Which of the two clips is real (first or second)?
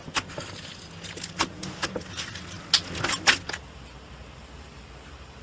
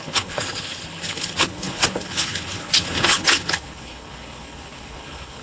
first